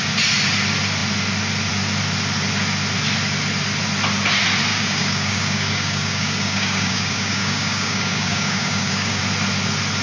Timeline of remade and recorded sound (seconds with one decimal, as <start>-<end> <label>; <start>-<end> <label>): 0.0-4.7 recorded; 4.7-9.2 remade; 9.2-10.0 recorded